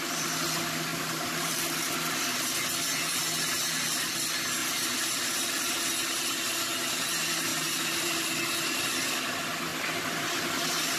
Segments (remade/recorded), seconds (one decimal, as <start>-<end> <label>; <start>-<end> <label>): 0.0-0.9 recorded; 0.9-1.6 remade; 1.6-4.6 recorded; 4.6-5.7 remade; 5.7-7.5 recorded; 7.5-8.3 remade; 8.3-11.0 recorded